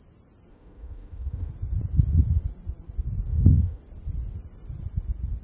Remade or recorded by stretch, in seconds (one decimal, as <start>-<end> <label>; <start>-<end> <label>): 0.0-0.5 recorded; 0.5-1.5 remade; 1.5-3.3 recorded; 3.3-3.8 remade; 3.8-5.4 recorded